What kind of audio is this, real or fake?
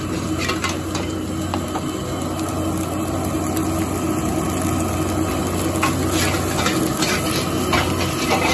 real